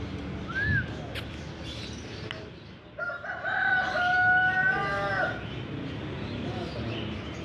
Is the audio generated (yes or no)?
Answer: no